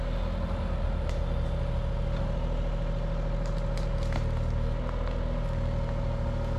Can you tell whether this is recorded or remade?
recorded